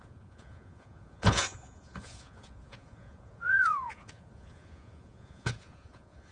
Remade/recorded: remade